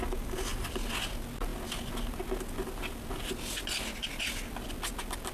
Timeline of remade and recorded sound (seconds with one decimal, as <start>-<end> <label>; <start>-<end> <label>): 0.0-5.3 recorded